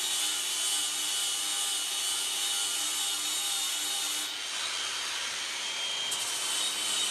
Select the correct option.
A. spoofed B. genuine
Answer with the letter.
B